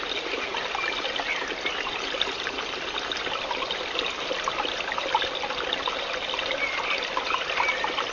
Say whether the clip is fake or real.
real